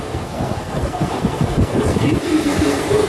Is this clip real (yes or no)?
no